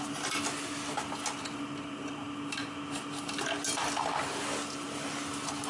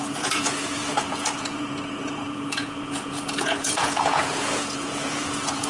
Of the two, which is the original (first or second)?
first